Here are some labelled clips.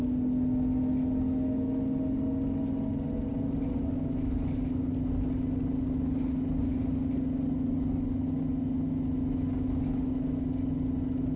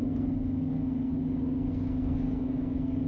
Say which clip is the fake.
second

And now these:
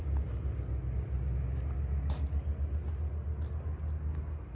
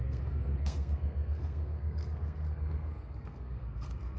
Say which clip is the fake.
second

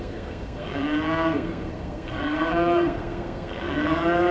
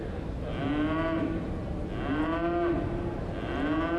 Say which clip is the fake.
first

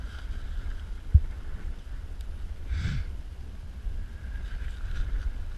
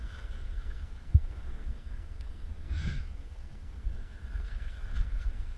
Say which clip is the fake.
second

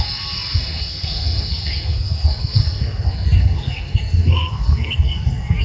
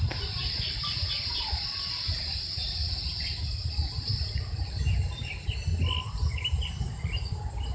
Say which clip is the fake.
first